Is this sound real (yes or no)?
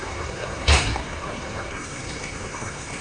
no